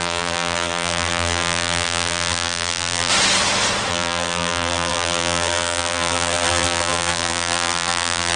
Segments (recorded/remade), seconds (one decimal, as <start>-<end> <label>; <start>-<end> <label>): 0.0-3.1 remade; 3.1-3.9 recorded; 3.9-8.4 remade